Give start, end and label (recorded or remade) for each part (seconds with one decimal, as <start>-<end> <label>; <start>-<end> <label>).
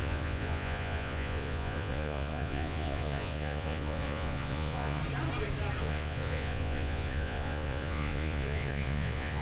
0.0-5.0 remade; 5.0-5.8 recorded; 5.8-9.4 remade